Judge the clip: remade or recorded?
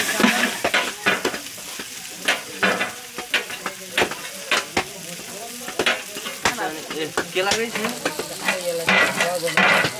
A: recorded